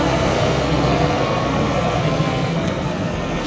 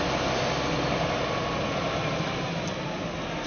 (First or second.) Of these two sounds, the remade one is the first